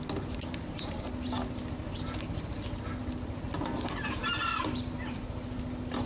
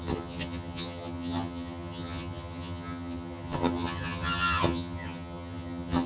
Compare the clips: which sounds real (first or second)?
first